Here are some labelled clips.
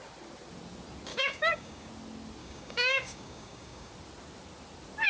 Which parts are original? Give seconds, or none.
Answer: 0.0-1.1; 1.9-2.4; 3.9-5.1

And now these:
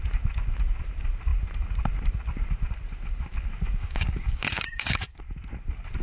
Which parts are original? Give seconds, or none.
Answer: 0.0-3.8; 5.2-6.0

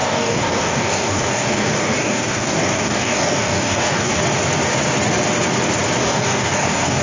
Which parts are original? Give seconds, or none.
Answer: 4.2-6.0